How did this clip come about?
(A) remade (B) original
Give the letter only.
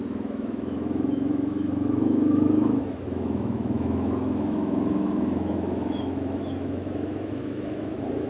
A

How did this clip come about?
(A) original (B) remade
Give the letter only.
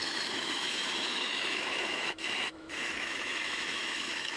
B